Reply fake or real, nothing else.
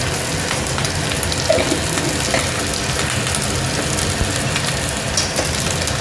real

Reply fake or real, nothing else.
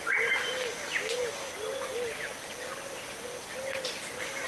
real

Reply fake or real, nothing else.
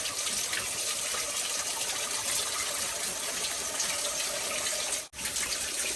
real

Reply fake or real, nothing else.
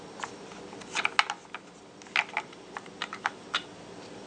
real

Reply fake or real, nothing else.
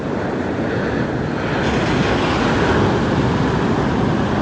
real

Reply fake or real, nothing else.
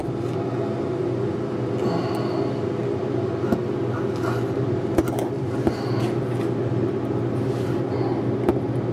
real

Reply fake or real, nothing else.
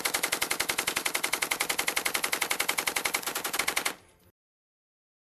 fake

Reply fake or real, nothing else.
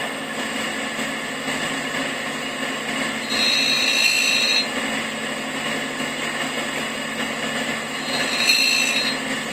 real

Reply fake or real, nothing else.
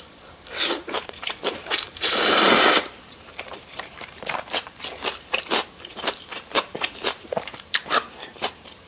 fake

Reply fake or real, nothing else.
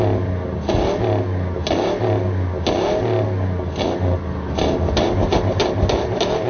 real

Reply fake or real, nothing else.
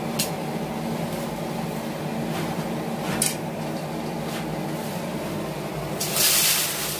real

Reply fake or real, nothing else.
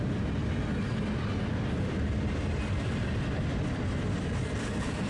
real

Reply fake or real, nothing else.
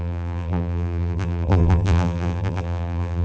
fake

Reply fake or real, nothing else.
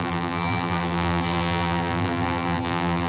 fake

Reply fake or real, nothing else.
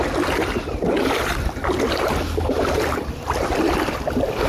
real